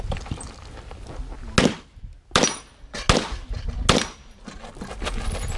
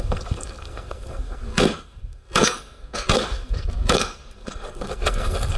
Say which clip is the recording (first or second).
first